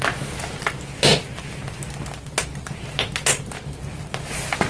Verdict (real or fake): real